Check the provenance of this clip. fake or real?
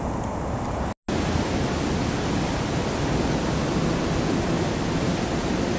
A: real